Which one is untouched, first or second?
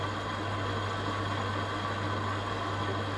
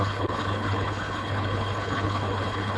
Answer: first